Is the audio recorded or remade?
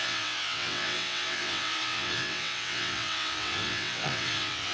remade